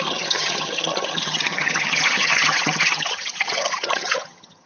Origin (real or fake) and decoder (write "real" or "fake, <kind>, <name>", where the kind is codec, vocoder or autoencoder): fake, vocoder, HiFi-GAN